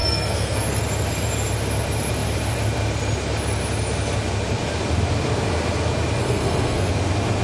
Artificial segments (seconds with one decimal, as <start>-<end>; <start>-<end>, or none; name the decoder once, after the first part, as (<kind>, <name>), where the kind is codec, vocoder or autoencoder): 0.0-0.8 (codec, SNAC); 6.2-6.9